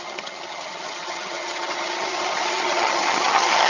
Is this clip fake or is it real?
fake